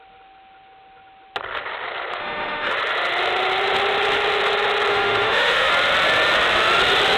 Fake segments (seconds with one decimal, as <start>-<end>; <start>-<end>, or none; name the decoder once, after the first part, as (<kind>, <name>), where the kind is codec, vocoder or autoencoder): 2.2-2.7 (autoencoder, DAC-VAE); 4.9-5.7

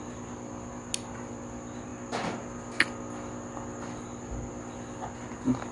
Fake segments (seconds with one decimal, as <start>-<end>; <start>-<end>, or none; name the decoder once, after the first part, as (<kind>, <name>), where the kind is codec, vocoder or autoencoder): none

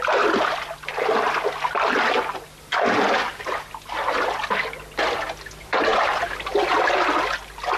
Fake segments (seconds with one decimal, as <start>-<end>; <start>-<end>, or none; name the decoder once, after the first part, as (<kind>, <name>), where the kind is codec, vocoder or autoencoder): none

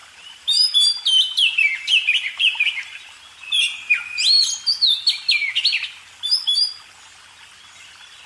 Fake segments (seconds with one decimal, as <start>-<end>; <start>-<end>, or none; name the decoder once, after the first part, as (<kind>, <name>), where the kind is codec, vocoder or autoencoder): 0.0-3.2 (vocoder, BigVGAN v2)

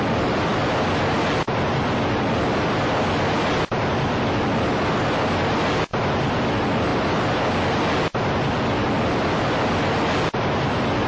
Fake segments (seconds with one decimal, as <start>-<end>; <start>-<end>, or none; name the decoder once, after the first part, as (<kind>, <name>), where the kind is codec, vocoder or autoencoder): none